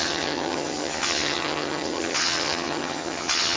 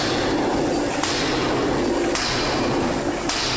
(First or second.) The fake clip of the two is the first